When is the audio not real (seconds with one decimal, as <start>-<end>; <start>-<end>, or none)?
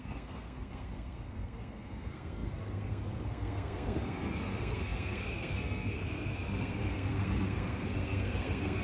0.0-8.8